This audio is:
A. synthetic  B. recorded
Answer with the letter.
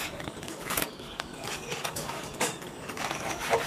A